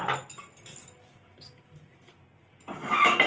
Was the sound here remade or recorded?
recorded